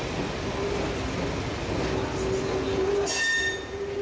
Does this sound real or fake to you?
real